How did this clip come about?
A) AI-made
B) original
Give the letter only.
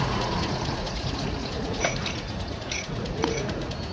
A